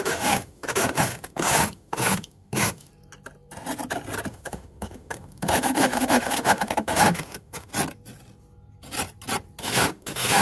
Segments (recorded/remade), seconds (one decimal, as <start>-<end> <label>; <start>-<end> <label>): 0.0-2.9 remade; 2.9-4.3 recorded; 4.3-7.7 remade; 7.7-9.6 recorded; 9.6-10.4 remade